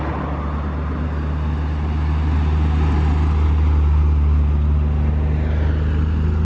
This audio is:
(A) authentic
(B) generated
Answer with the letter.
A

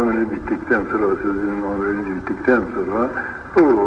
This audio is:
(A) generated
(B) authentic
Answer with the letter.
B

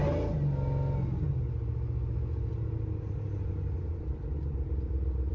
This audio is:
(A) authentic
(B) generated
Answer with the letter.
A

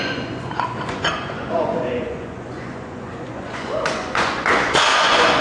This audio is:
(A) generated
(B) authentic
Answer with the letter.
A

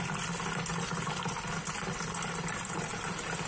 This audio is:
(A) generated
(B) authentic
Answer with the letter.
B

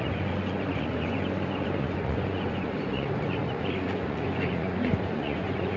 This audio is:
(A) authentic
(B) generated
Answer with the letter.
B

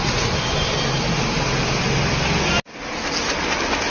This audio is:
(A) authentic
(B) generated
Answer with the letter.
A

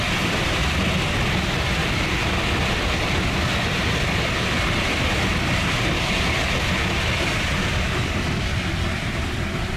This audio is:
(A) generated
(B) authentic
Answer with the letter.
B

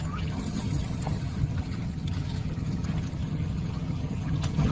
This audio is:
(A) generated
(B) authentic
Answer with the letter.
A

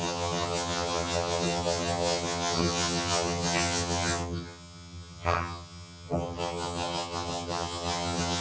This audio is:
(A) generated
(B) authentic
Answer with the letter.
A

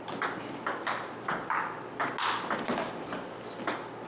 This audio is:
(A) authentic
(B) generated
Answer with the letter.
A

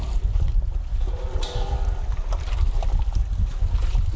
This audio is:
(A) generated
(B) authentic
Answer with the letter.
B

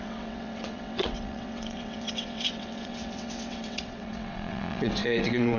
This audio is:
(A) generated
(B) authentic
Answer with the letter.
A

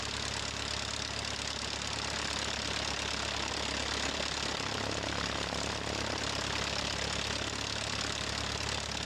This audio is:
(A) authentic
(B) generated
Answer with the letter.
A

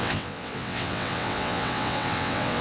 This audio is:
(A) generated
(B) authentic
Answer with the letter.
A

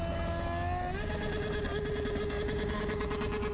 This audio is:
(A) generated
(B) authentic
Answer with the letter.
B